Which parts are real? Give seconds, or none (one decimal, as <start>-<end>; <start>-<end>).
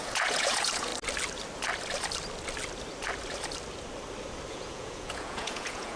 0.9-4.5